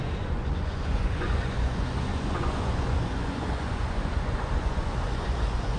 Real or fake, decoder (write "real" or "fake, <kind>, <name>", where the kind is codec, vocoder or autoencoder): fake, vocoder, Vocos